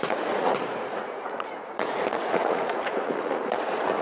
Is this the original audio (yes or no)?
no